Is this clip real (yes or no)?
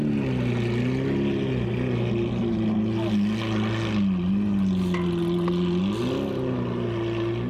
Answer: yes